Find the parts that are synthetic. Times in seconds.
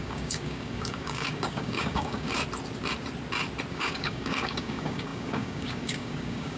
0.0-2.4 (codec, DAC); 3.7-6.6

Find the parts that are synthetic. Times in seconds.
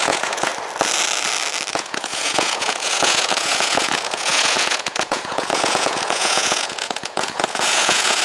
0.0-0.5 (vocoder, Vocos); 1.7-8.2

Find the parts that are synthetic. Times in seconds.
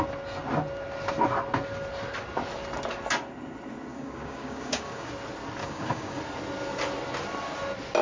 3.9-5.1 (codec, DAC); 5.6-6.2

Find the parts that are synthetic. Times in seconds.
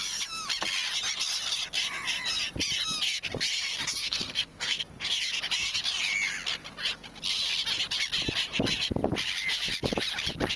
4.0-4.8 (codec, SNAC)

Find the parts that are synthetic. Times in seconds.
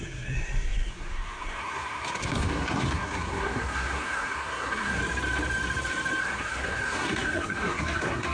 0.0-5.0 (codec, SNAC); 6.2-8.3